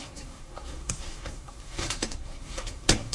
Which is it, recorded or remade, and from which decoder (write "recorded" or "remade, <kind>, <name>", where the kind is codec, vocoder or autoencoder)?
remade, codec, SNAC